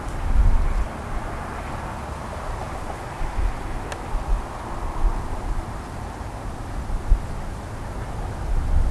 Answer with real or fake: real